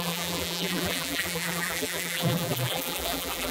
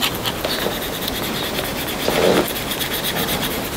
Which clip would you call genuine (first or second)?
second